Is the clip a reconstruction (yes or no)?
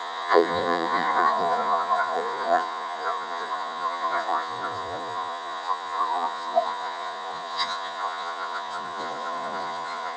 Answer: yes